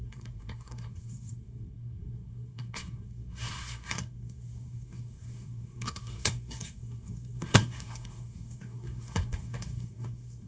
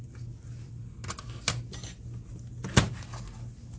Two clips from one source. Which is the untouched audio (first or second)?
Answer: second